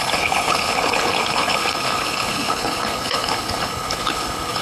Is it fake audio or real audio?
fake